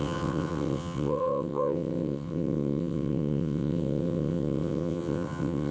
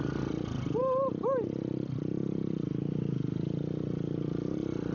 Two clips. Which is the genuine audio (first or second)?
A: second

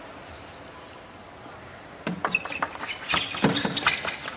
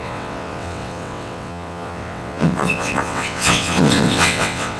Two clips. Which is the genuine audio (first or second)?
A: first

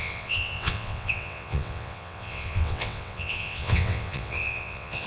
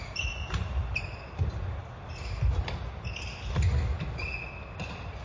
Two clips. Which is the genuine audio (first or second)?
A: second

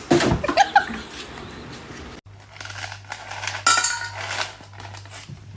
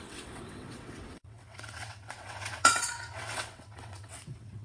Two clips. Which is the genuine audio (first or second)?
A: first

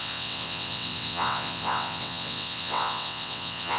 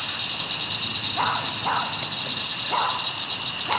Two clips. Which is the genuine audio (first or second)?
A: second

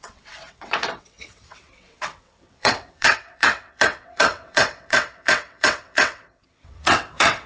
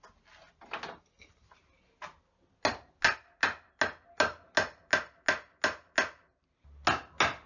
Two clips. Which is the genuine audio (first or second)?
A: second